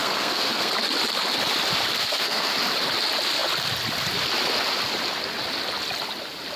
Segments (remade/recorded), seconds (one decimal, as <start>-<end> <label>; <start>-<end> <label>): 0.0-0.7 remade; 0.7-2.0 recorded; 2.0-2.5 remade; 2.5-6.6 recorded